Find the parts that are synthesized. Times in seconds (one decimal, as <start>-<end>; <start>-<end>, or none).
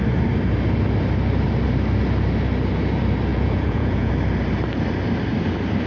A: 3.3-4.1